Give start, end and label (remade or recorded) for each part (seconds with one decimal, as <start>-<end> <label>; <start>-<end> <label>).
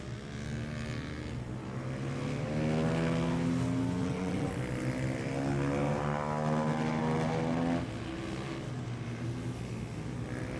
0.0-4.0 recorded; 4.0-4.5 remade; 4.5-10.6 recorded